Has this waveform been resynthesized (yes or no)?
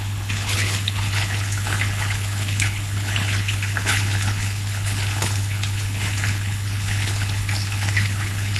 yes